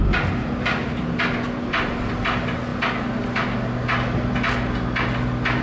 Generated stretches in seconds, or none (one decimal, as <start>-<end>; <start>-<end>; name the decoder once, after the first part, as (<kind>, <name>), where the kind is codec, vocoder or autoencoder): 0.0-2.7 (vocoder, BigVGAN v2)